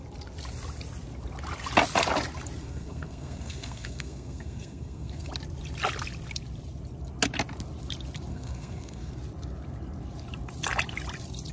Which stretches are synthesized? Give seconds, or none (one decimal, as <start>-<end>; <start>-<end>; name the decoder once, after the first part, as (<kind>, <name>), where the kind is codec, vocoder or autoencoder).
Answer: 2.6-5.3 (codec, SNAC); 8.3-9.1